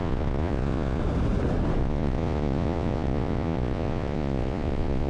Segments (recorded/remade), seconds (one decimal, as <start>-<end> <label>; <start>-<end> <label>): 0.0-1.0 remade; 1.0-1.8 recorded; 1.8-5.1 remade